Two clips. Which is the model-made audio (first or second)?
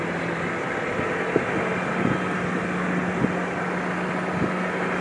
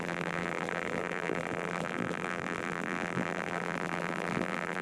second